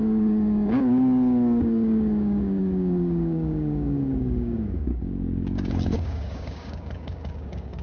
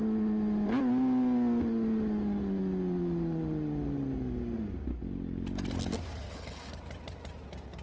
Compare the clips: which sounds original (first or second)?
second